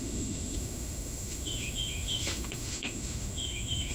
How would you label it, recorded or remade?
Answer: remade